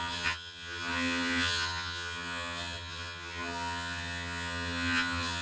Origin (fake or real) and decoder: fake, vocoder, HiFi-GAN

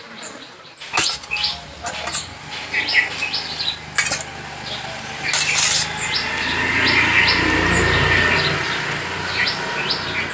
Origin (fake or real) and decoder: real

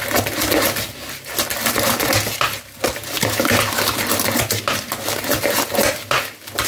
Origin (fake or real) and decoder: real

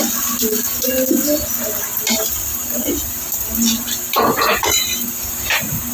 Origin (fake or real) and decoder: real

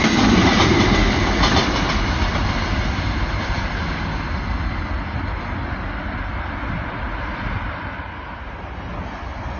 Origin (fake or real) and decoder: real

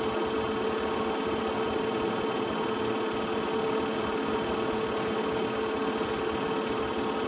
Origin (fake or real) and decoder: real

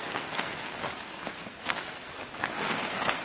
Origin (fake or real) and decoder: fake, codec, SNAC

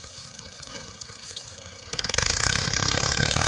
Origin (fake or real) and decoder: fake, codec, SNAC